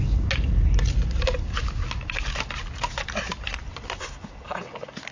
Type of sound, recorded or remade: recorded